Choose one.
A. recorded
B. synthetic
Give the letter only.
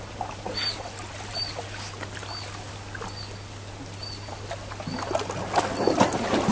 A